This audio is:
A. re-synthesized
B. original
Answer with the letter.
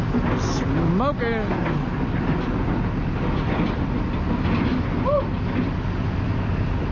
B